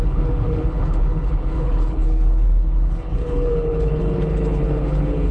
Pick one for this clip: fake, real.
fake